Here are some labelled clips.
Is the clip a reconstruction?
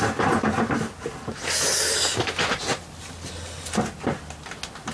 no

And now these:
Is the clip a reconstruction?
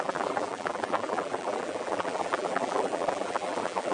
yes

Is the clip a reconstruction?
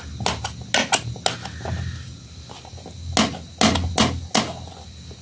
no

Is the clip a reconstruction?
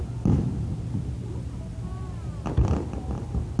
no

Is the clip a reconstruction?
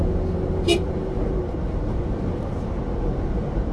no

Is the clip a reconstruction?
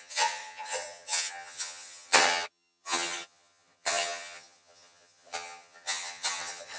yes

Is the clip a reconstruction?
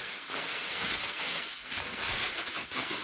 yes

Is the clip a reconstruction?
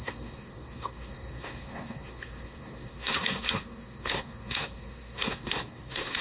yes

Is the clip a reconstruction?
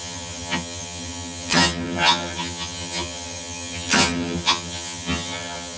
yes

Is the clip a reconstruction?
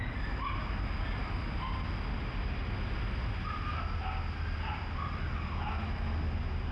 no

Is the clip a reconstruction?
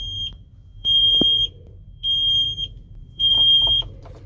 yes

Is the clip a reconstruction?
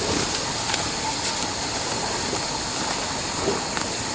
no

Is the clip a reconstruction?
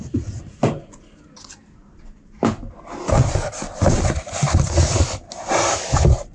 yes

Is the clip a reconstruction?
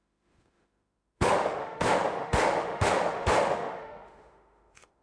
yes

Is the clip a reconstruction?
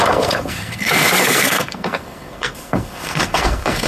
yes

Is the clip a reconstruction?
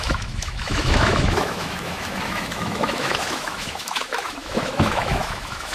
yes